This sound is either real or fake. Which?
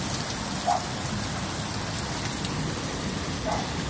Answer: real